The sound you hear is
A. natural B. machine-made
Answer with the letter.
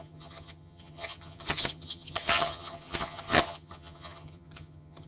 B